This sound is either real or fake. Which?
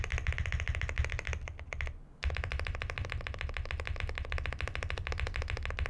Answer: real